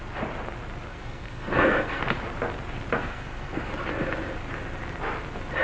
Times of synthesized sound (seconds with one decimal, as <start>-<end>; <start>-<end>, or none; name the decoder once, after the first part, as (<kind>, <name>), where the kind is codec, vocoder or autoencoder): 0.9-2.0 (codec, SNAC); 3.0-3.7